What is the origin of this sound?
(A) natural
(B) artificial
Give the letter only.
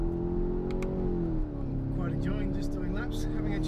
A